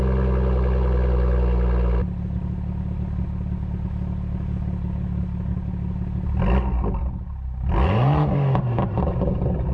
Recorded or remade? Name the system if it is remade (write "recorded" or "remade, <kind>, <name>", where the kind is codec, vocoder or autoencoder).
recorded